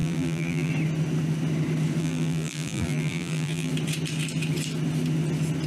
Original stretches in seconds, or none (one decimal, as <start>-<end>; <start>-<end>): 0.7-2.0; 3.7-5.7